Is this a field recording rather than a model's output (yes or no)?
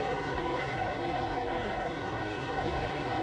no